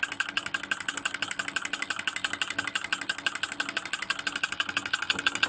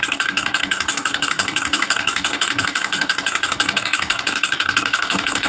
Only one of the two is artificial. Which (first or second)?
second